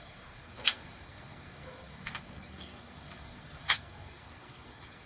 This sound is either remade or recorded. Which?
remade